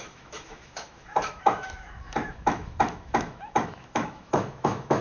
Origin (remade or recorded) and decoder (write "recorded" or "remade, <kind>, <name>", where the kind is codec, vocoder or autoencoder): remade, autoencoder, DAC-VAE